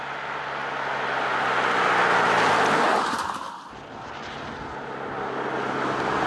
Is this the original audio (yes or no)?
yes